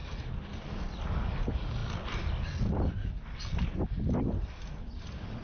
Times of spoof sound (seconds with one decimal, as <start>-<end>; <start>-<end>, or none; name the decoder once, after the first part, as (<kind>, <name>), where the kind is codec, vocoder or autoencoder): none